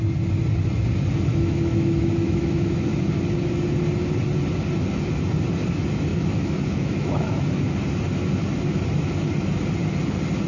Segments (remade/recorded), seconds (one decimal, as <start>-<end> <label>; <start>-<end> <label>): 0.0-1.3 recorded; 1.3-3.1 remade; 3.1-6.1 recorded; 6.1-7.6 remade; 7.6-10.5 recorded